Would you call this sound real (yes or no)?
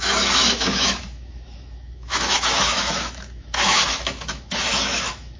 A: no